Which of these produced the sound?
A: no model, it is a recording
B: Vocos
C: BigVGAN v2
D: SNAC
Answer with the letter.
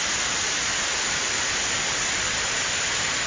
A